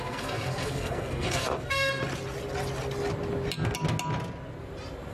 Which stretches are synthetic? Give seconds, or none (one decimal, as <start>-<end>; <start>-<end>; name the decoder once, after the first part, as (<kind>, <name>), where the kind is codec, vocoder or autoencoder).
0.0-2.0 (codec, SNAC)

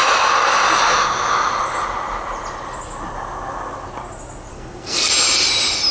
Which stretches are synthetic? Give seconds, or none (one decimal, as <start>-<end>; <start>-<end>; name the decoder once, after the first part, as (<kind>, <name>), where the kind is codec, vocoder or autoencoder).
4.5-5.1 (codec, SNAC)

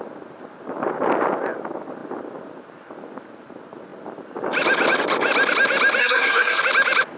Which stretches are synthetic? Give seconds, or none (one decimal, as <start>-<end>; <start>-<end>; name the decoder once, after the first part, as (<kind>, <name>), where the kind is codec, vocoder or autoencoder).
6.0-6.6 (codec, SNAC)

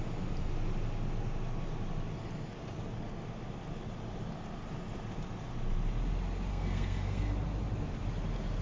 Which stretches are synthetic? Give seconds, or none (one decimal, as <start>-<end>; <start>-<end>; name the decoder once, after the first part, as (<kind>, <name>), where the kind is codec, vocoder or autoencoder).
6.5-7.2 (codec, SNAC)